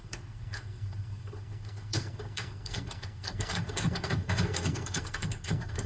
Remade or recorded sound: remade